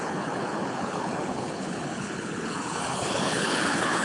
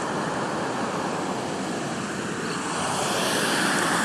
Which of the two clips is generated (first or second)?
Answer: first